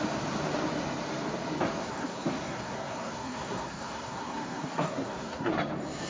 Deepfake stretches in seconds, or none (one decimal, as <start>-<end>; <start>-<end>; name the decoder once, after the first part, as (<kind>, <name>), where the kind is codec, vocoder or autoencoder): 1.8-5.5 (codec, SNAC)